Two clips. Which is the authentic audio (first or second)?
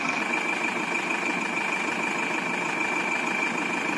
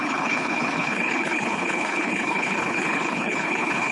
first